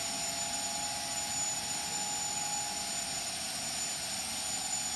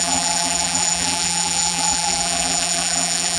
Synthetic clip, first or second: second